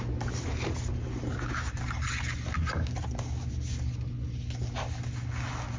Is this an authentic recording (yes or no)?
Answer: yes